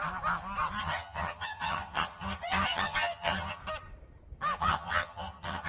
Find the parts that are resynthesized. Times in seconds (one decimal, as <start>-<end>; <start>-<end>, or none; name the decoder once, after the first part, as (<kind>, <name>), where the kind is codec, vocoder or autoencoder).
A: 0.8-3.6 (vocoder, HiFi-GAN); 4.6-5.7